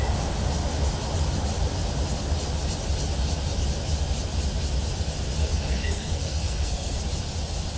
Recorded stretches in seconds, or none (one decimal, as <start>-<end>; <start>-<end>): 0.0-5.4; 7.0-7.8